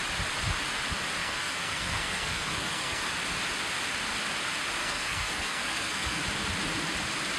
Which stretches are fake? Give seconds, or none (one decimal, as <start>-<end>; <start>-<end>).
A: 1.2-3.1; 4.8-6.2